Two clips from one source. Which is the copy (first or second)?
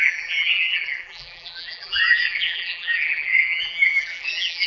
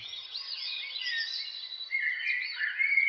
first